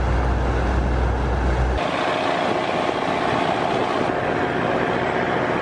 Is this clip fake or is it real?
real